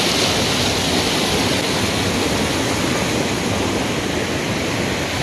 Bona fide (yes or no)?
yes